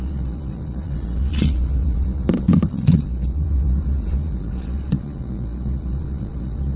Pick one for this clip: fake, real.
fake